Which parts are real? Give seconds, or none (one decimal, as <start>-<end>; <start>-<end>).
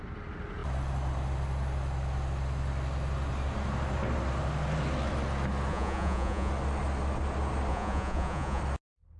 0.0-5.7; 6.5-7.7; 8.6-9.2